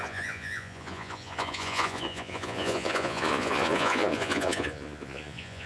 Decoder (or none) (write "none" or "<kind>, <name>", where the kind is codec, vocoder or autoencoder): vocoder, Vocos